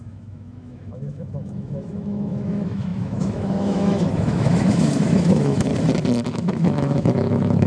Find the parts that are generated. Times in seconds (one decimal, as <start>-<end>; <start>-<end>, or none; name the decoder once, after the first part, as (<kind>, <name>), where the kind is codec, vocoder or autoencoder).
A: 0.0-5.7 (autoencoder, DAC-VAE); 6.3-7.7